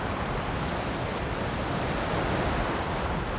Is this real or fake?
real